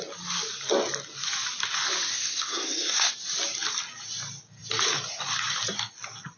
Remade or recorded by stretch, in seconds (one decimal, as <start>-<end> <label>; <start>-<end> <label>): 0.0-2.1 recorded; 2.1-3.1 remade; 3.1-6.4 recorded

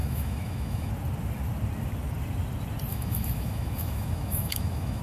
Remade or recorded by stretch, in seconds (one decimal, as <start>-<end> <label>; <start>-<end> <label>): 0.0-0.9 remade; 0.9-2.9 recorded; 2.9-5.0 remade

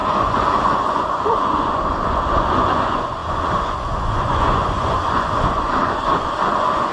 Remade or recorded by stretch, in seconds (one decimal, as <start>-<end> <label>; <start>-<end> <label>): 0.0-6.9 remade

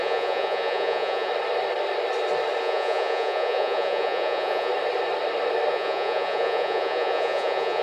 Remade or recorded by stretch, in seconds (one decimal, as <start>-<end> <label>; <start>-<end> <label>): 0.0-1.3 remade; 1.3-2.6 recorded; 2.6-4.7 remade; 4.7-5.7 recorded; 5.7-7.8 remade